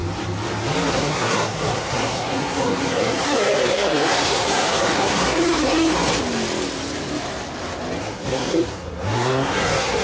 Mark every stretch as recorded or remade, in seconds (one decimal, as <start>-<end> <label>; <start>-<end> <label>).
0.0-0.9 recorded; 0.9-6.1 remade; 6.1-8.0 recorded; 8.0-10.0 remade